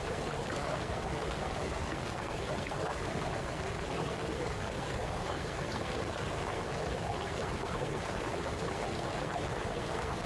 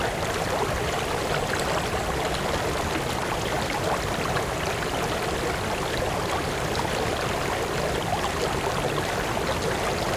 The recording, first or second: second